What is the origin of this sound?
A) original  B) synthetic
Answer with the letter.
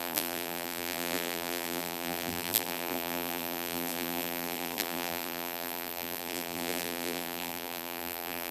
B